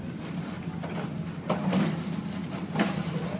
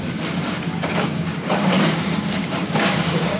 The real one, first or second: first